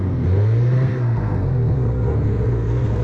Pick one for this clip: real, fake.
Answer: fake